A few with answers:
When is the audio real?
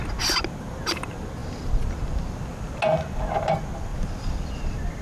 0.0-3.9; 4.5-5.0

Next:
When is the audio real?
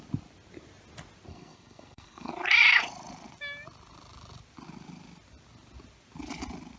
0.0-1.3; 2.3-6.8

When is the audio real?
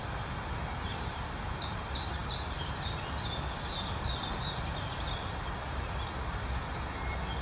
0.0-7.4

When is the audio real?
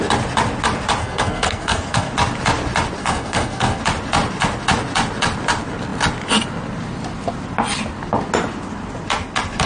0.0-1.0; 2.1-3.0; 3.8-9.7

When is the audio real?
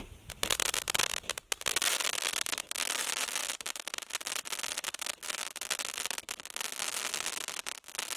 0.0-8.2